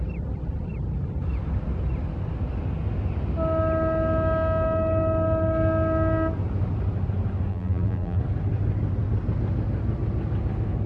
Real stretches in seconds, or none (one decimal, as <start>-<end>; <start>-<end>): 0.0-7.5; 8.2-10.9